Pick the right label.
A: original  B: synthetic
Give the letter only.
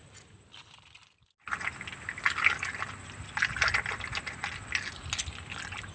A